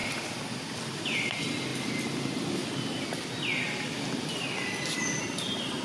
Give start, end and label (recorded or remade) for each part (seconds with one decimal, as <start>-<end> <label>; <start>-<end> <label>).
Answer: 0.0-0.6 remade; 0.6-5.8 recorded